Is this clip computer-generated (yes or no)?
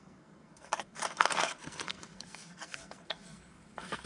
yes